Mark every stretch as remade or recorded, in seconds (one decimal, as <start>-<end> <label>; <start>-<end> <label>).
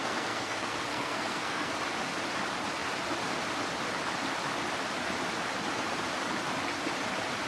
0.0-1.7 remade; 1.7-7.5 recorded